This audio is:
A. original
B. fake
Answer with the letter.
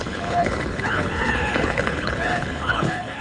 B